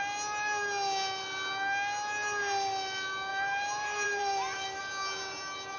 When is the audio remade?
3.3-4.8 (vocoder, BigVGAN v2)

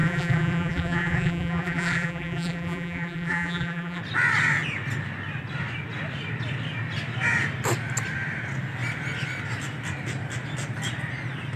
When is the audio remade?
0.0-4.0 (vocoder, BigVGAN v2)

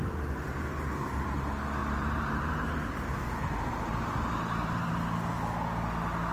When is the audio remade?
1.8-2.8 (vocoder, BigVGAN v2); 3.2-4.9

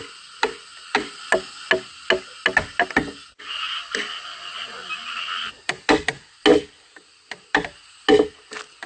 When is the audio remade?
none

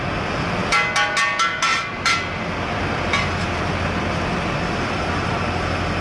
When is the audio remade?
1.7-5.3 (vocoder, BigVGAN v2)

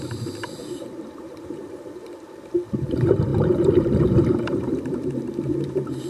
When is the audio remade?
0.0-2.0 (vocoder, BigVGAN v2); 2.7-6.1